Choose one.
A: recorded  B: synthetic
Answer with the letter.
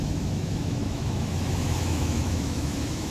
B